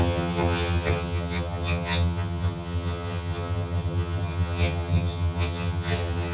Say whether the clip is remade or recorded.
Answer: remade